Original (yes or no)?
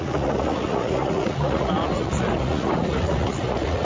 no